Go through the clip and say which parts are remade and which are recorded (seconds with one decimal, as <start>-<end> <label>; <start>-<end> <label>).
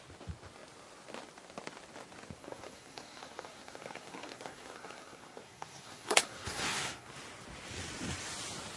0.0-2.4 recorded; 2.4-7.1 remade; 7.1-8.8 recorded